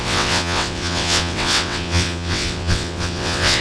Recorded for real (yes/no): no